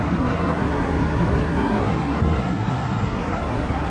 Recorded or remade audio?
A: remade